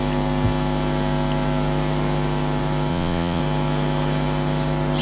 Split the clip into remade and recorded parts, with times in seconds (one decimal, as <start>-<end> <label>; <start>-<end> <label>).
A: 0.0-2.9 recorded; 2.9-3.4 remade; 3.4-5.0 recorded